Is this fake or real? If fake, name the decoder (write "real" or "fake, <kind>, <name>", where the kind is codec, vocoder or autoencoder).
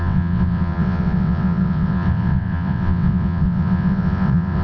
fake, vocoder, WaveNeXt